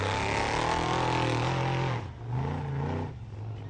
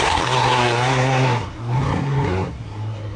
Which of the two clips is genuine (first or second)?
first